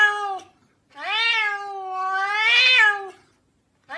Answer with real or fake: real